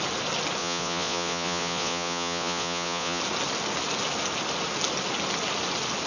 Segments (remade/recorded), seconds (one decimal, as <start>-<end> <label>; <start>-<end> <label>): 0.0-0.6 recorded; 0.6-3.2 remade; 3.2-6.1 recorded

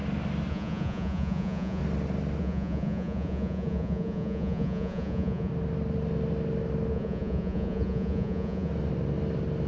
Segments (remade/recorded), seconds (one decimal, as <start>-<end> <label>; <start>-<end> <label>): 0.0-0.5 recorded; 0.5-1.8 remade; 1.8-2.4 recorded; 2.4-5.5 remade; 5.5-6.9 recorded; 6.9-8.7 remade; 8.7-9.7 recorded

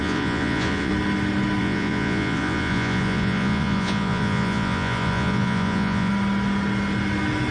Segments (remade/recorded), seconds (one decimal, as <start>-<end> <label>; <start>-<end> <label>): 0.0-0.9 remade; 0.9-1.6 recorded; 1.6-6.1 remade; 6.1-7.5 recorded